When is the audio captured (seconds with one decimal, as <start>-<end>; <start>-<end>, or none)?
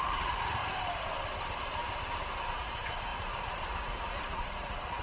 0.6-2.6